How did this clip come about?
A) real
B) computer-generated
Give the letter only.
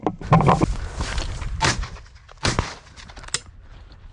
A